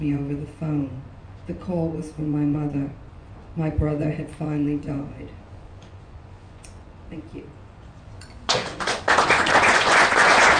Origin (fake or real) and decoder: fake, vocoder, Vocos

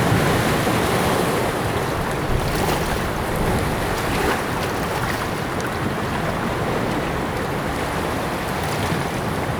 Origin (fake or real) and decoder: real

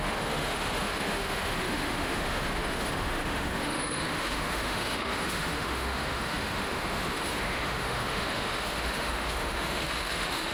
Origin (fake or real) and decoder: fake, autoencoder, DAC-VAE